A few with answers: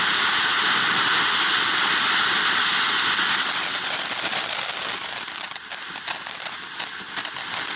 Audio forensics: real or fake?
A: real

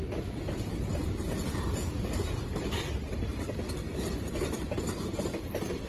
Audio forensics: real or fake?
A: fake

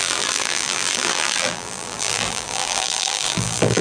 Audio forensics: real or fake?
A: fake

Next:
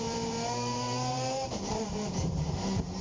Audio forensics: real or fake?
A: fake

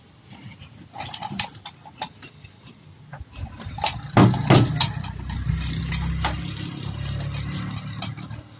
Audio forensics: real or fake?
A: real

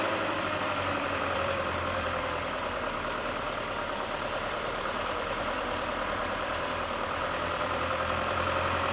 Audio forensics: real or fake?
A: fake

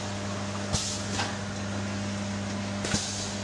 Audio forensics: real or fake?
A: real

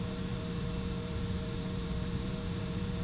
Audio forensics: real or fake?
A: fake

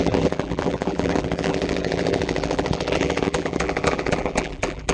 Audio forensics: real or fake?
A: fake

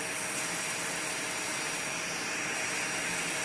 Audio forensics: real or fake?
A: real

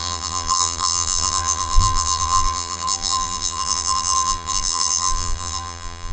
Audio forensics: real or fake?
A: fake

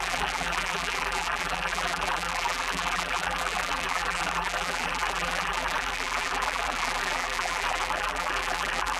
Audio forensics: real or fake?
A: fake